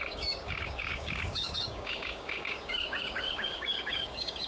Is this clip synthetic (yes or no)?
yes